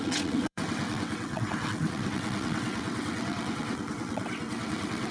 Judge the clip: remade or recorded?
remade